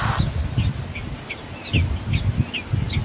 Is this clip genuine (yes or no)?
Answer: yes